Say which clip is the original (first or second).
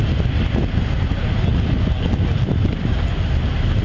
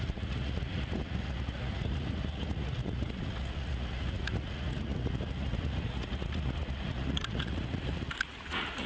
first